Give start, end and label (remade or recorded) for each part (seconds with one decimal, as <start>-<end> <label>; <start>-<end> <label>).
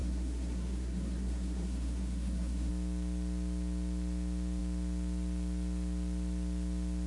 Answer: 0.0-2.7 remade; 2.7-7.1 recorded